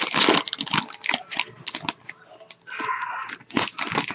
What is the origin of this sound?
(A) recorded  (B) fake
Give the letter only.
A